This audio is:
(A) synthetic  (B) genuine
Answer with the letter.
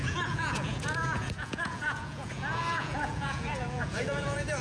A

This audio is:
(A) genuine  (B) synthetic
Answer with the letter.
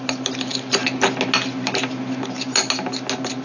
A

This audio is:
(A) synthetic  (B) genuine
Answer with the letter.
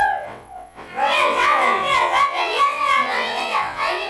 A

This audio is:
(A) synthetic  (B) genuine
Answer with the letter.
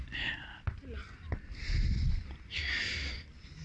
B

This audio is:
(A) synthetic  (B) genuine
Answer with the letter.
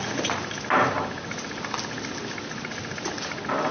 B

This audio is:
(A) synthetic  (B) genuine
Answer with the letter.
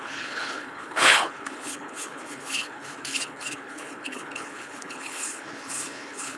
A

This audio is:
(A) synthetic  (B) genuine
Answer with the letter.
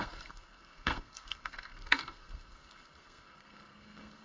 A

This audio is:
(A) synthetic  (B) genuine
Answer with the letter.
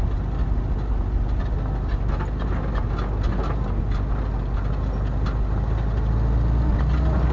B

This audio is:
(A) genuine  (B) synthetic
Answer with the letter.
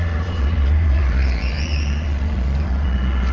B